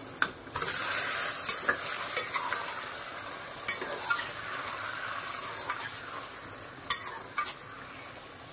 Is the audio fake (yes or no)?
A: no